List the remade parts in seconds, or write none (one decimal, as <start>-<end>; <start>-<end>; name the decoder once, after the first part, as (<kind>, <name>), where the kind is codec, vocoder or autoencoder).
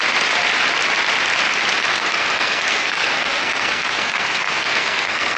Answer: 1.9-5.4 (codec, SNAC)